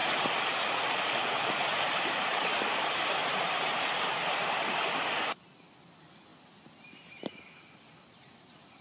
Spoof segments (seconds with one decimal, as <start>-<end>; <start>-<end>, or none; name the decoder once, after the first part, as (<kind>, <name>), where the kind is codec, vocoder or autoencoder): 1.7-4.3 (vocoder, BigVGAN v2); 6.3-7.4